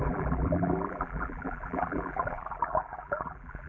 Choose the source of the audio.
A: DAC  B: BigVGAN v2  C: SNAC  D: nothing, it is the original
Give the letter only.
B